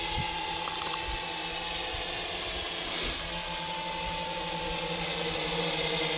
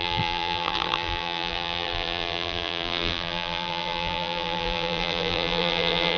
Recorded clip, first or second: first